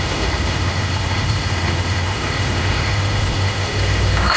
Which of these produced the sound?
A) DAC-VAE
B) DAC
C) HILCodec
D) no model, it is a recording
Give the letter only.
A